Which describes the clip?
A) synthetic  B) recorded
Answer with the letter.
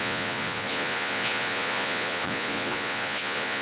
A